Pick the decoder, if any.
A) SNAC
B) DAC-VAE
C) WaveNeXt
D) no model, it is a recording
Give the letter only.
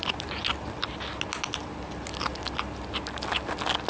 D